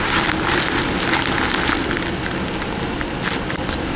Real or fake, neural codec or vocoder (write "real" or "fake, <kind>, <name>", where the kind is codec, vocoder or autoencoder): real